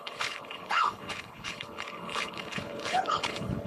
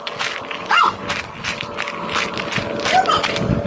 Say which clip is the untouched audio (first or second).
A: second